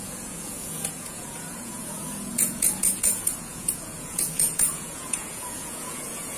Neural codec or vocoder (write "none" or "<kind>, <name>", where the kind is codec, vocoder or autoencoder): vocoder, Vocos